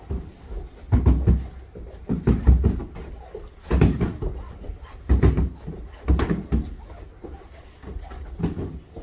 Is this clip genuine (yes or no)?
yes